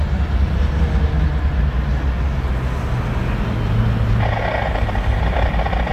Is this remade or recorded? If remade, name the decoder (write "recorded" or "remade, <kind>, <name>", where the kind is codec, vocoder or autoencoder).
recorded